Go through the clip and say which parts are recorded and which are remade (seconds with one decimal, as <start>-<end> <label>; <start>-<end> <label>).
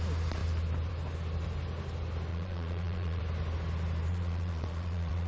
0.0-2.3 recorded; 2.3-3.2 remade; 3.2-4.1 recorded; 4.1-5.3 remade